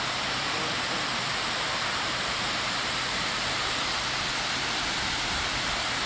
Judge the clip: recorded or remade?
remade